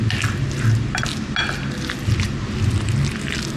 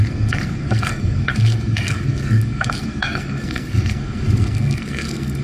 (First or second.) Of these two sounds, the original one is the first